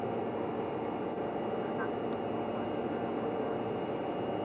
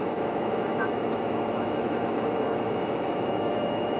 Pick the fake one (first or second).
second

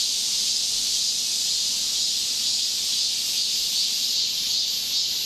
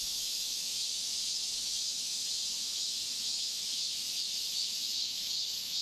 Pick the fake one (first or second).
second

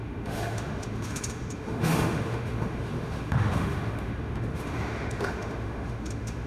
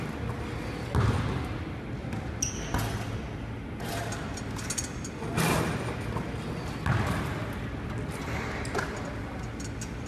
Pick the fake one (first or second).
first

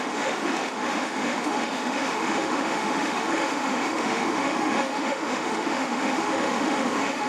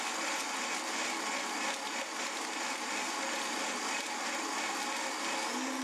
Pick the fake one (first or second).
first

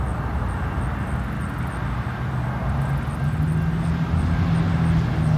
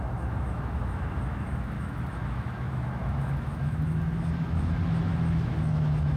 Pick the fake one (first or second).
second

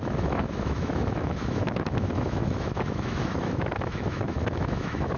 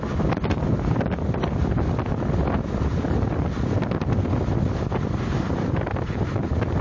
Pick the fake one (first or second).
first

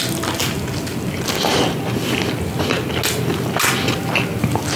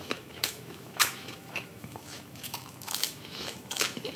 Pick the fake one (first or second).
second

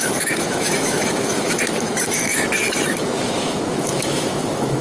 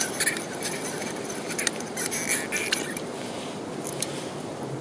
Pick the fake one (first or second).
first